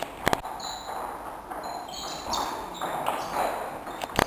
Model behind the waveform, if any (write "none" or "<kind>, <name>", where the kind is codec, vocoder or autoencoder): none